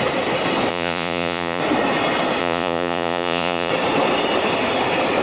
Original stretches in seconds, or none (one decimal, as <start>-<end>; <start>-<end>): 0.0-0.7; 1.6-2.4; 3.7-5.2